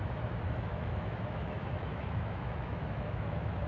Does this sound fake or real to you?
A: fake